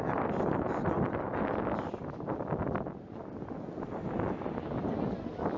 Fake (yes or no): no